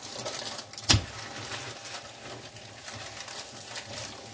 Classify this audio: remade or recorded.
recorded